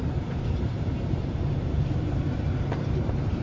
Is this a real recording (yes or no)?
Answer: no